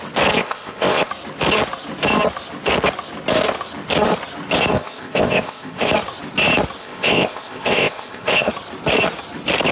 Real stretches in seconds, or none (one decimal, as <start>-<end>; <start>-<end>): 0.0-0.4; 1.1-4.7; 5.9-6.8; 8.5-9.7